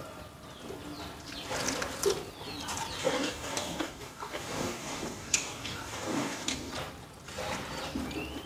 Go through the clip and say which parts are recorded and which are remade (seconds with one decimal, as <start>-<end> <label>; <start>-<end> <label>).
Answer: 0.0-3.0 recorded; 3.0-6.7 remade; 6.7-8.5 recorded

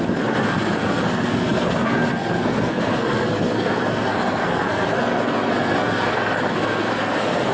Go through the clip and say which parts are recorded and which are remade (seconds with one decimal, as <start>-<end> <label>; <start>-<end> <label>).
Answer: 0.0-7.5 remade